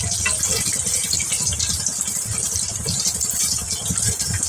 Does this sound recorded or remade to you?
recorded